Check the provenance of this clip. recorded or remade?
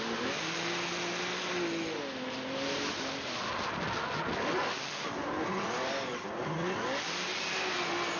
recorded